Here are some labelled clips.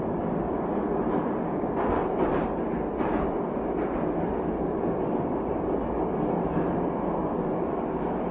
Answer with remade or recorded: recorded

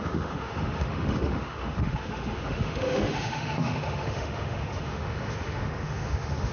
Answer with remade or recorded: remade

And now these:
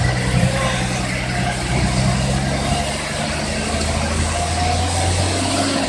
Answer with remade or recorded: recorded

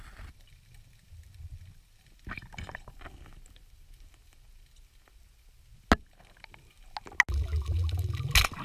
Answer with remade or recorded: recorded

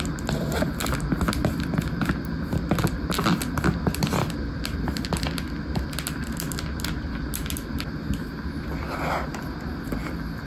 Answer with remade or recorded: recorded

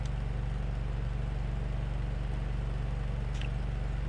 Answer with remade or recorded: recorded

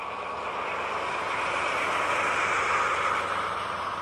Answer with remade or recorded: recorded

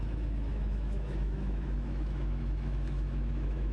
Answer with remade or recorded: remade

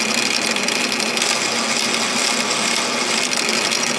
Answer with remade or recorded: recorded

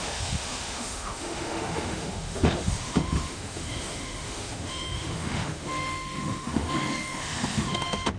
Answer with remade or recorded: remade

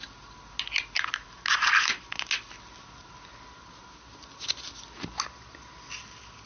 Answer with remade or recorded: recorded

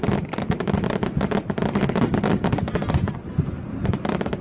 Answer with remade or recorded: recorded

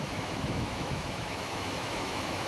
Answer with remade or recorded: remade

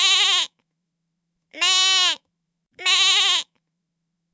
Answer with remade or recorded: remade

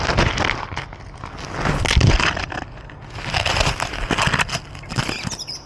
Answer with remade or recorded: recorded